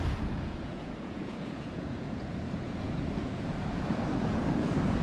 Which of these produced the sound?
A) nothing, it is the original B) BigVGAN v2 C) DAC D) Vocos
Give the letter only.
D